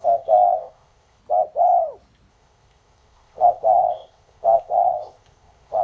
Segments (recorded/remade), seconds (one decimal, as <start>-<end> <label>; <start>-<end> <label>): 0.0-1.2 remade; 1.2-2.3 recorded; 2.3-5.8 remade